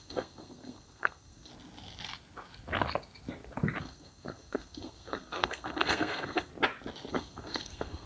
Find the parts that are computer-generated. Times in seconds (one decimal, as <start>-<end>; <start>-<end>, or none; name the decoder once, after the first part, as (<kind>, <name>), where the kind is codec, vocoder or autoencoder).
0.0-1.5 (codec, SNAC); 3.8-6.5; 7.1-8.1